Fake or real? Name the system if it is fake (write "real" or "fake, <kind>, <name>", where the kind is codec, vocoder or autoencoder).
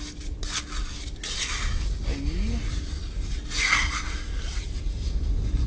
real